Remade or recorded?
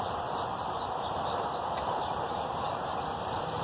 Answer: remade